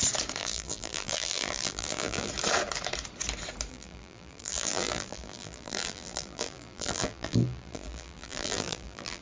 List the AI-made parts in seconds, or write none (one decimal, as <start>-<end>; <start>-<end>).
0.4-2.3; 3.7-9.2